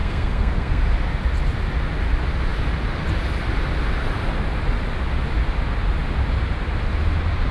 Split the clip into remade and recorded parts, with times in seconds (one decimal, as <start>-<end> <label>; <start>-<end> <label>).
0.0-0.8 remade; 0.8-7.5 recorded